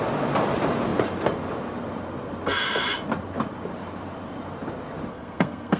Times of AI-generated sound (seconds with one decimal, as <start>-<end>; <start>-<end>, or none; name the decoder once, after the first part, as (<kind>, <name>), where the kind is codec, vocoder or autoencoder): 5.1-5.8 (codec, SNAC)